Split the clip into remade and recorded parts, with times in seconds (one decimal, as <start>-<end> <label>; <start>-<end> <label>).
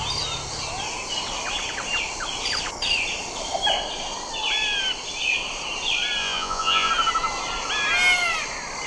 0.0-6.2 recorded; 6.2-6.9 remade; 6.9-8.9 recorded